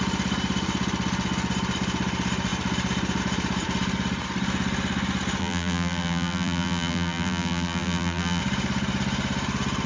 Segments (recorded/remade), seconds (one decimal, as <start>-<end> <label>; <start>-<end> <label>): 0.0-5.4 recorded; 5.4-8.4 remade; 8.4-9.9 recorded

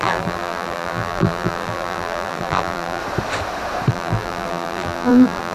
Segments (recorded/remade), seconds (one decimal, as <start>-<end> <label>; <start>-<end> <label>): 0.0-3.0 remade; 3.0-3.9 recorded; 3.9-5.5 remade

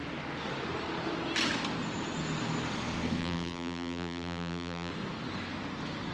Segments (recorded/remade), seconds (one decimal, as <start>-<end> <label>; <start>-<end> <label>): 0.0-3.2 recorded; 3.2-4.9 remade; 4.9-6.1 recorded

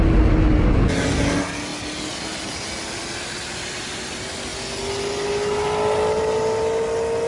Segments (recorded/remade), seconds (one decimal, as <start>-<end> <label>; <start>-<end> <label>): 0.0-7.3 recorded

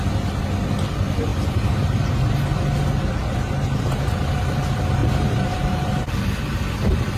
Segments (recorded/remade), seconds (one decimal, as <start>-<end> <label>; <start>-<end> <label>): 0.0-1.3 recorded; 1.3-2.2 remade; 2.2-3.4 recorded; 3.4-4.3 remade; 4.3-5.0 recorded; 5.0-6.1 remade; 6.1-7.2 recorded

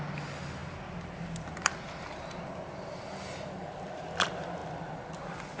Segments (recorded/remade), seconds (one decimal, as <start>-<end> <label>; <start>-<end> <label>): 0.0-5.6 recorded

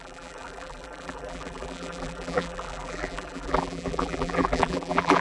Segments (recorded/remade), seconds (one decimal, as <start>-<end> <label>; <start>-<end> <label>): 0.0-5.2 remade

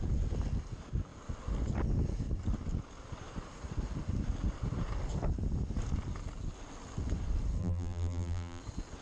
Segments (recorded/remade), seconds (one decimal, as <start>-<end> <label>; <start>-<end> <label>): 0.0-7.6 recorded; 7.6-8.6 remade; 8.6-9.0 recorded